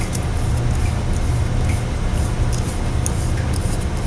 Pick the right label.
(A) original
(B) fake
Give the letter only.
A